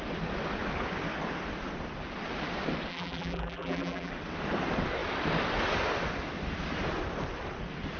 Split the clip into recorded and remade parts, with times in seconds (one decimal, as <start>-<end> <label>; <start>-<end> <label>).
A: 0.0-2.9 recorded; 2.9-4.1 remade; 4.1-8.0 recorded